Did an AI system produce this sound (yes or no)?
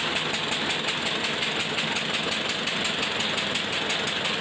no